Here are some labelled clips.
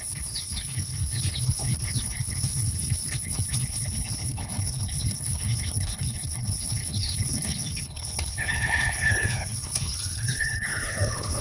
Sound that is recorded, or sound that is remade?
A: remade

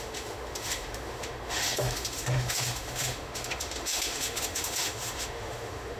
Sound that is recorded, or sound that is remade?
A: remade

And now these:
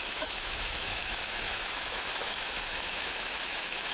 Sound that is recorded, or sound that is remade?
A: remade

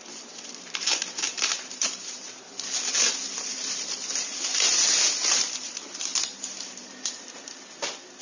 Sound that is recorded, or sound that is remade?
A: remade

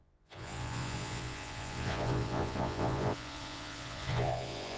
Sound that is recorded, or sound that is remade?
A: remade